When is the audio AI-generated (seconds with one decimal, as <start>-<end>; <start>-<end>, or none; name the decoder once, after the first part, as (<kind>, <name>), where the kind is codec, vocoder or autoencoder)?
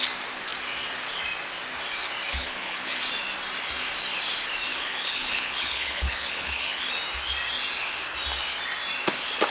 2.3-3.0 (codec, HILCodec); 4.7-6.9